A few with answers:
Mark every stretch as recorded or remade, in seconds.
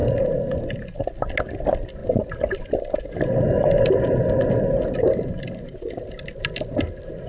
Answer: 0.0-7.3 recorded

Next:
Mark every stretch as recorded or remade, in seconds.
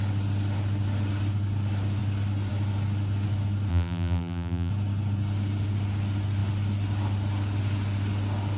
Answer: 0.0-3.7 recorded; 3.7-4.7 remade; 4.7-8.6 recorded